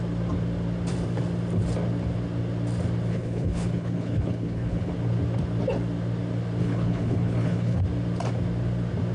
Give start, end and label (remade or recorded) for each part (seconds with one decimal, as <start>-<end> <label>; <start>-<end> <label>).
0.0-3.1 recorded; 3.1-4.9 remade; 4.9-6.6 recorded; 6.6-7.8 remade; 7.8-9.1 recorded